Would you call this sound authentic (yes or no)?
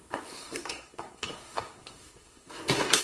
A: no